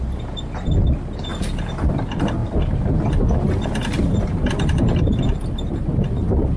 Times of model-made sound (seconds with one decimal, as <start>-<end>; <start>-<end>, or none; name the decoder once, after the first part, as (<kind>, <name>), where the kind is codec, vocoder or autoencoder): none